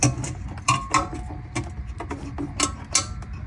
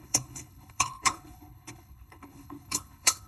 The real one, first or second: first